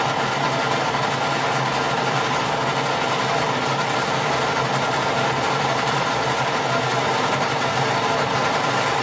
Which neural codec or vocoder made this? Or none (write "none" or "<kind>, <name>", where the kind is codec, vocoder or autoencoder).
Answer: none